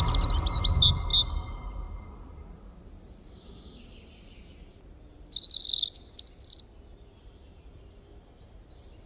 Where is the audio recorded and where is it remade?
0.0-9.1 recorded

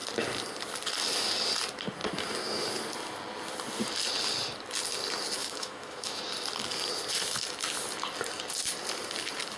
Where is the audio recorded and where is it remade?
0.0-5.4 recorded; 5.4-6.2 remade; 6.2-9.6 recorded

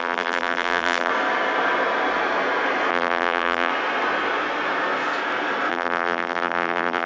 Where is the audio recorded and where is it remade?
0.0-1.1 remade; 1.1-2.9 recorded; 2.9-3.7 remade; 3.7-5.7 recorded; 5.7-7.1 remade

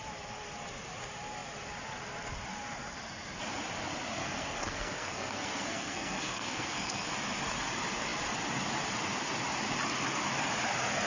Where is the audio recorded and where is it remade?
0.0-4.2 recorded; 4.2-7.1 remade; 7.1-11.1 recorded

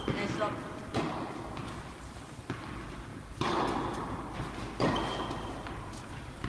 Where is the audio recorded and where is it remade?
0.0-6.5 recorded